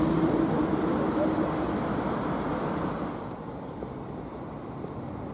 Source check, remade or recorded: remade